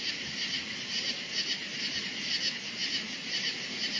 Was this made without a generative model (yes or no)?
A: yes